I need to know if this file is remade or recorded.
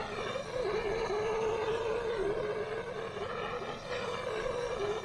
recorded